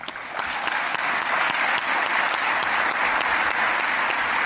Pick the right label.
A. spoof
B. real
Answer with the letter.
B